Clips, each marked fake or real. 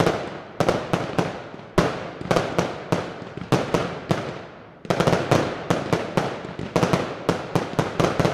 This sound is real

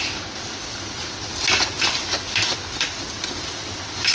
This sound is real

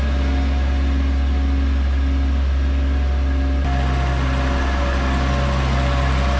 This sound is real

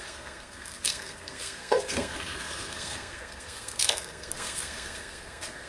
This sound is fake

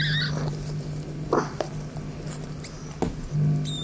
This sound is real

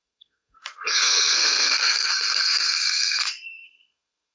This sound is fake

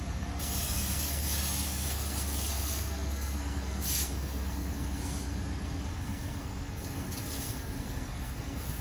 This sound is fake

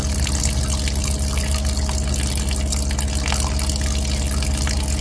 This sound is real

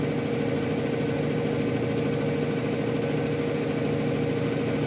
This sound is real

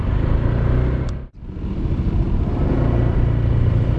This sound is real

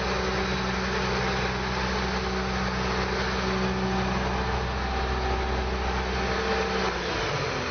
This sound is real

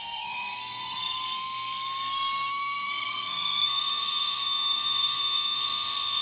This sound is fake